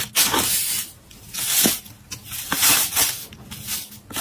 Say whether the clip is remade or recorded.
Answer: recorded